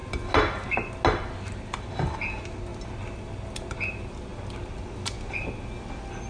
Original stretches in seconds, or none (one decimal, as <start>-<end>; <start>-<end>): 0.0-6.3